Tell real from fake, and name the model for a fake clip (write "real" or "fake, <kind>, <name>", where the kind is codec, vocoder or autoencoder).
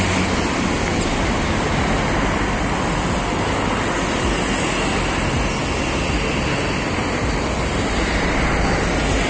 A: real